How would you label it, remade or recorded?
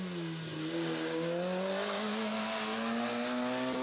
recorded